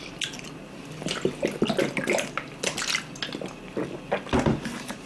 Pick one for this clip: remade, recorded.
recorded